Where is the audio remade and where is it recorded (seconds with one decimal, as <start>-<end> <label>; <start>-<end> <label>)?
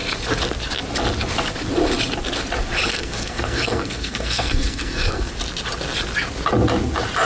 0.0-2.9 recorded; 2.9-5.3 remade; 5.3-7.2 recorded